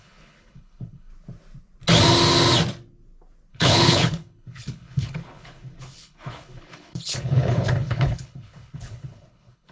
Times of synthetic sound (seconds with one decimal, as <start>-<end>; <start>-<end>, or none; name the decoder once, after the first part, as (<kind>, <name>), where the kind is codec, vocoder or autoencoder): 0.0-1.1 (codec, HILCodec); 3.5-9.7